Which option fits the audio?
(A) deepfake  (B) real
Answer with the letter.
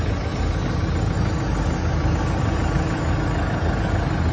B